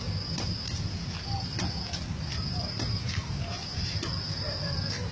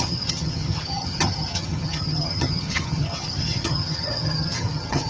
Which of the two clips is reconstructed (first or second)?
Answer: second